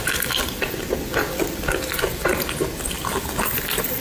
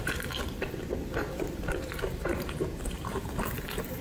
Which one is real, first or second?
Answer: first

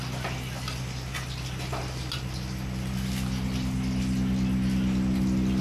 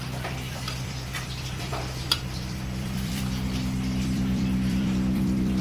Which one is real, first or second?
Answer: first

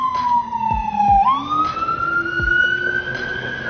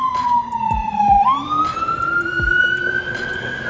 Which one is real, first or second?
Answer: first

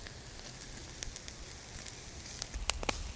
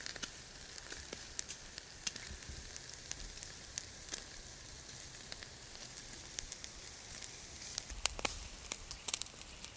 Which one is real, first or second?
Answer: first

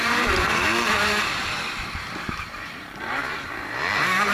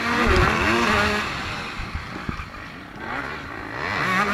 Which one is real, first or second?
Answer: second